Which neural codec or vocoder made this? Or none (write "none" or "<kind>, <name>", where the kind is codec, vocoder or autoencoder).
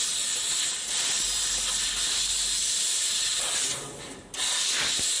none